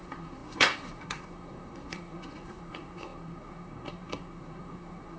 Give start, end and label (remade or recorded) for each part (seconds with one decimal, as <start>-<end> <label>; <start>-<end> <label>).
0.0-5.2 remade